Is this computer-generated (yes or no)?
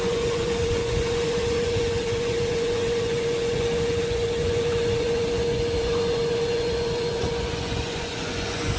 yes